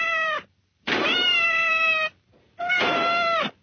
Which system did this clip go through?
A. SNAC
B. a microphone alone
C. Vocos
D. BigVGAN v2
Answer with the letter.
D